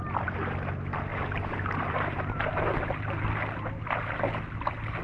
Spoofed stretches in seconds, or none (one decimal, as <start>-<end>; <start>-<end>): 1.1-3.0